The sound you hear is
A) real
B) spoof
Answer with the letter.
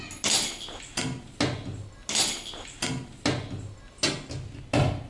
A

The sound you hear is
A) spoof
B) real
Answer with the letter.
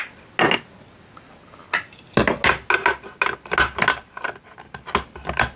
B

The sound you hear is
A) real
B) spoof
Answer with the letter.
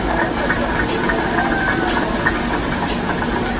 A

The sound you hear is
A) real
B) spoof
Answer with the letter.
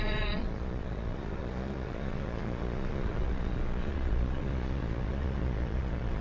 B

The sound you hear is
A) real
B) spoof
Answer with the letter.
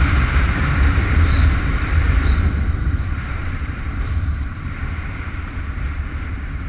B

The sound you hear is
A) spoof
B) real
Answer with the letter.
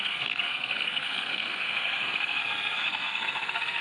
A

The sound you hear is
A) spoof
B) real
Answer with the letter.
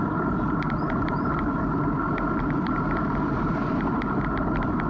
A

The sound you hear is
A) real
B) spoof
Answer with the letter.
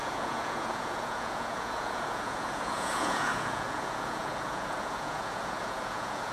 B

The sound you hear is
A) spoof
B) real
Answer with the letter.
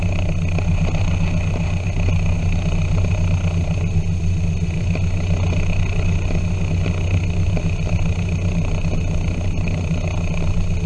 B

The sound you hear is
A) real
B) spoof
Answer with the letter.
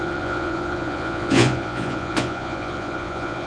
B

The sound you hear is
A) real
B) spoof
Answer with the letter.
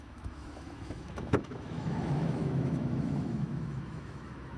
B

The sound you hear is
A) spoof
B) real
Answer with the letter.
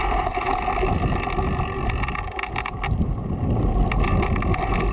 A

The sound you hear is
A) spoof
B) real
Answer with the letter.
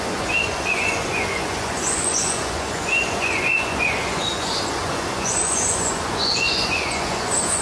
A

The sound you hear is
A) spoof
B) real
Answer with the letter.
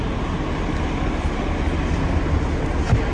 B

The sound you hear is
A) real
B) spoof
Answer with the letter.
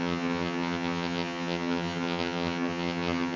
B